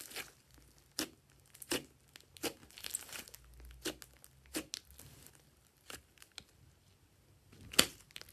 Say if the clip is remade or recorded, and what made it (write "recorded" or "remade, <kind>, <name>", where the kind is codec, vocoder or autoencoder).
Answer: recorded